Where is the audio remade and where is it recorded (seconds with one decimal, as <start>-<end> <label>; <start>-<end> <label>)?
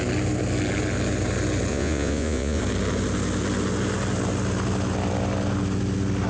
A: 0.0-1.7 recorded; 1.7-2.6 remade; 2.6-6.3 recorded